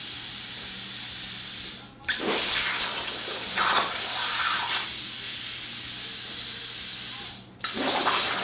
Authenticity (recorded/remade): recorded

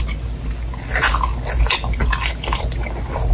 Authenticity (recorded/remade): recorded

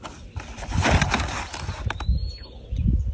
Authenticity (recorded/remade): recorded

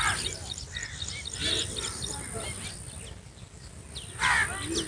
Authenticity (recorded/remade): recorded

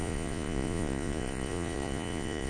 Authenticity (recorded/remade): remade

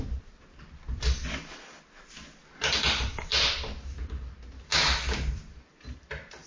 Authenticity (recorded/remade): recorded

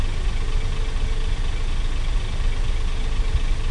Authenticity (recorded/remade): recorded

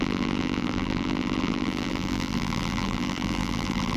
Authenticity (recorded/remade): remade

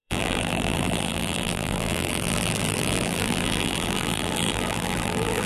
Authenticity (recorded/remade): remade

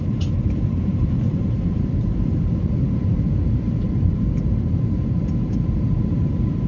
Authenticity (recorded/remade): remade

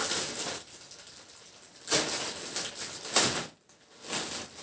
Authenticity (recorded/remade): recorded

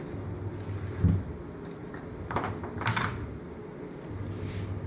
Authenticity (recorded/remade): recorded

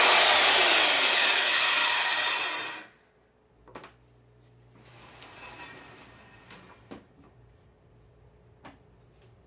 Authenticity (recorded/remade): recorded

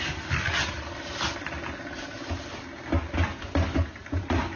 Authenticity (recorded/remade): recorded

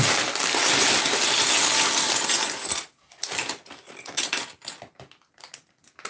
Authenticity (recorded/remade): recorded